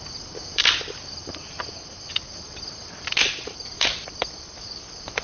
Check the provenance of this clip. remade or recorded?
remade